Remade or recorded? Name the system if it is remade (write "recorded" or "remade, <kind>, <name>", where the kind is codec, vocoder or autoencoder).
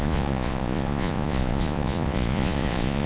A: remade, vocoder, Vocos